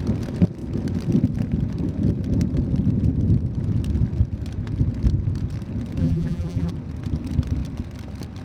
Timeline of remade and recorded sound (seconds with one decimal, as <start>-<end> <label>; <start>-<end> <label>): 0.0-6.0 recorded; 6.0-6.7 remade; 6.7-8.4 recorded